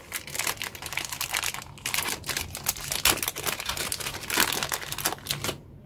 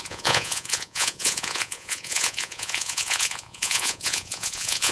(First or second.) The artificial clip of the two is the second